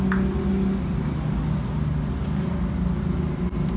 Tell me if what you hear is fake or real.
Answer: real